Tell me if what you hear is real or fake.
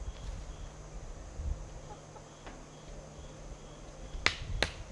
real